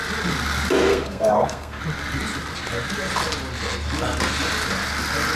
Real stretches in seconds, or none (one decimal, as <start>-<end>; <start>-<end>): 0.0-0.9; 1.8-5.4